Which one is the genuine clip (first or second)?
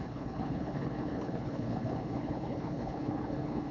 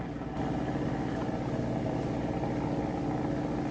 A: second